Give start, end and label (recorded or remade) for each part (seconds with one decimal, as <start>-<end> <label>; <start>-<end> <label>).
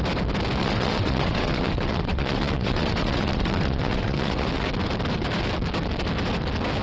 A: 0.0-0.6 recorded; 0.6-4.7 remade; 4.7-6.8 recorded